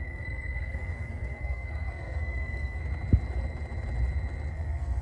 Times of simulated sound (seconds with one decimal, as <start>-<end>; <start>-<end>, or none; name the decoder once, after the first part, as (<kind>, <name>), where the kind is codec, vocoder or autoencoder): 0.0-2.8 (codec, SNAC); 4.5-5.0